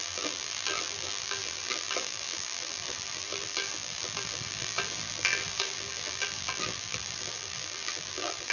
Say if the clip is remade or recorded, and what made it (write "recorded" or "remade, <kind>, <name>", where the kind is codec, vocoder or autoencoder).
remade, vocoder, BigVGAN v2